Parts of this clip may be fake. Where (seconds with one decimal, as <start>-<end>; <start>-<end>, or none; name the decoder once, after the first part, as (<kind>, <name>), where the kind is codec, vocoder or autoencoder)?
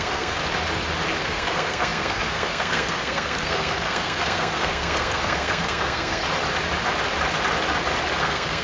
0.0-0.4 (codec, SNAC); 1.2-6.2; 8.2-8.6